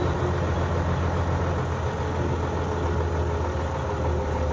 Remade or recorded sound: recorded